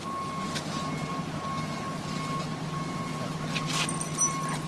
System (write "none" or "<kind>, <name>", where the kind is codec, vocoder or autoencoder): none